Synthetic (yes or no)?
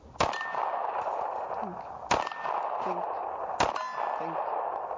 no